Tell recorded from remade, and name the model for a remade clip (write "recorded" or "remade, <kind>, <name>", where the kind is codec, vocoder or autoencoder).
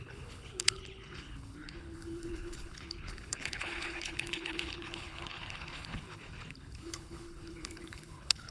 remade, codec, HILCodec